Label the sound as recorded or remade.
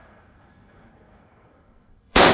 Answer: remade